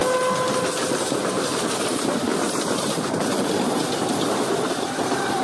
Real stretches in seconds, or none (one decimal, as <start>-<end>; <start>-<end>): 0.0-1.8

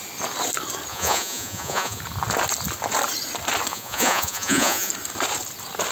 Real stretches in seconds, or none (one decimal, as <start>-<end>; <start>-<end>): 0.0-0.9; 2.0-3.7; 4.9-5.9